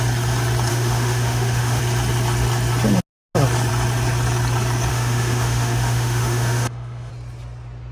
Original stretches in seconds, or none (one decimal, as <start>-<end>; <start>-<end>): 0.0-0.7; 1.8-4.9; 7.1-7.9